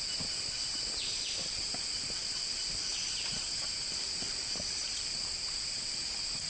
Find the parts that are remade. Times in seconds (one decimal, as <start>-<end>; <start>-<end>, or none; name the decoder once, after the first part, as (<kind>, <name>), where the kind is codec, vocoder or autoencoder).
none